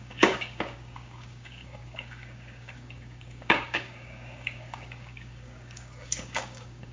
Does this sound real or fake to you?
fake